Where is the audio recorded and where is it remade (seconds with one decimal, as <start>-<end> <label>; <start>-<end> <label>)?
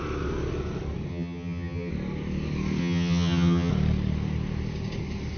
0.0-1.1 recorded; 1.1-1.9 remade; 1.9-2.8 recorded; 2.8-3.7 remade; 3.7-5.4 recorded